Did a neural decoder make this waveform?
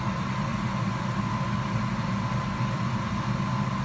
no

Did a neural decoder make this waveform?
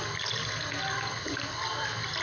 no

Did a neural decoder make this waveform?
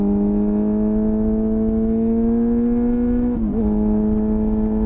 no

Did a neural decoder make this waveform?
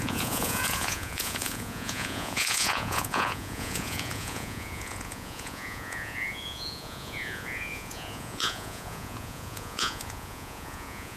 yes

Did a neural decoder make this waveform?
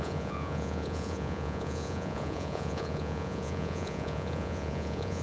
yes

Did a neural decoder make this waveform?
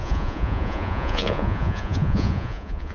yes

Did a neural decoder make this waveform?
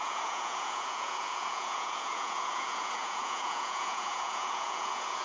yes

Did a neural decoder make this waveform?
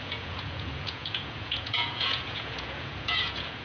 yes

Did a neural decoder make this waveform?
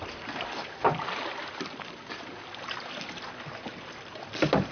no